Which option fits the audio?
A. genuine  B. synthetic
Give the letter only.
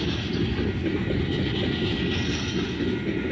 A